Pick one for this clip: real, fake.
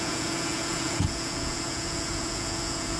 fake